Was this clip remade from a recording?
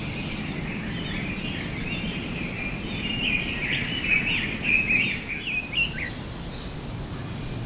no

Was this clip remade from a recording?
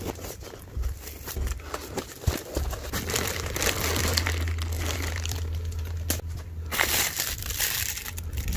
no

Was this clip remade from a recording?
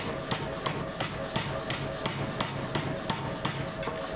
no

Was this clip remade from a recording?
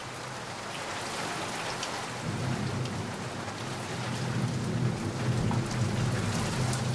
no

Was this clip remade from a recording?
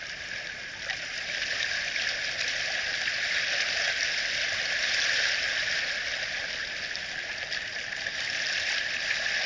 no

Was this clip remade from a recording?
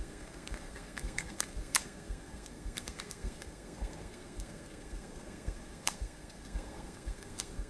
yes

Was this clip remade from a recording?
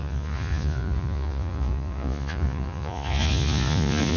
yes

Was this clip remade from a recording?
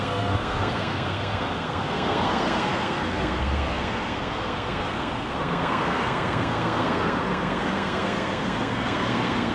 yes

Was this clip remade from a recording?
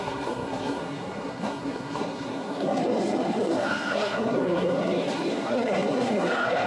yes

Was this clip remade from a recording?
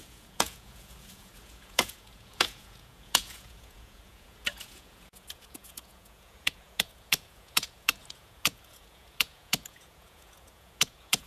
yes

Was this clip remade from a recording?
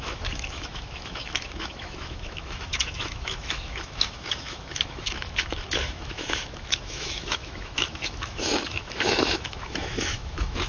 yes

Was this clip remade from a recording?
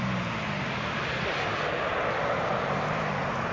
no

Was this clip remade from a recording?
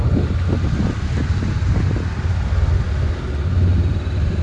no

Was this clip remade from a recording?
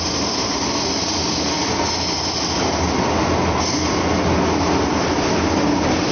no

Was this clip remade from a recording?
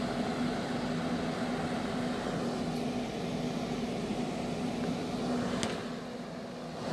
no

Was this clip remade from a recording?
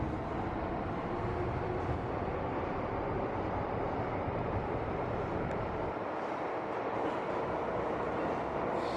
no